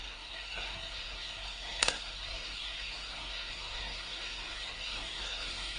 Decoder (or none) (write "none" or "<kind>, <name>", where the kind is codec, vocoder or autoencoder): codec, SNAC